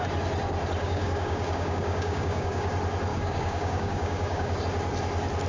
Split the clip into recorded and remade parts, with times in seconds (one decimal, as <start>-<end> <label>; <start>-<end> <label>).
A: 0.0-0.8 recorded; 0.8-2.7 remade; 2.7-3.1 recorded; 3.1-4.6 remade; 4.6-5.5 recorded